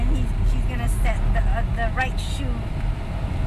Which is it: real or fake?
real